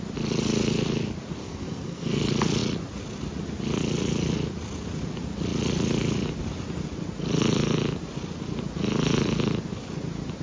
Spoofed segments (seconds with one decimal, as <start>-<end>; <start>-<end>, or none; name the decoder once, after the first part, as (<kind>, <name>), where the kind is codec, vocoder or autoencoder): 1.4-2.2 (codec, SNAC)